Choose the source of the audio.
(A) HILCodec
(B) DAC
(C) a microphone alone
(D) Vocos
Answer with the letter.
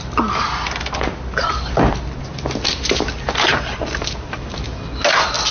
C